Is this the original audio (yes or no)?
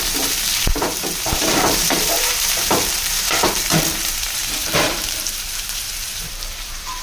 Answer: no